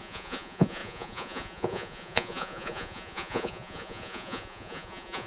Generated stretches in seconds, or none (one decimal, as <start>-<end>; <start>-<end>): 0.0-5.3